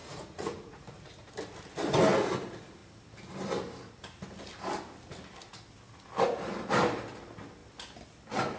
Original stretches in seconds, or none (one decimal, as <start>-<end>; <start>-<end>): 1.3-8.6